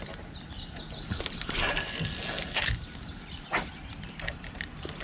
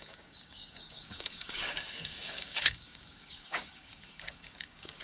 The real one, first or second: first